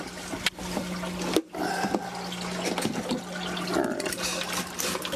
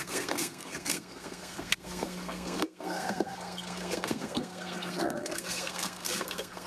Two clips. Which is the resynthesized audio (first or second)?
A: second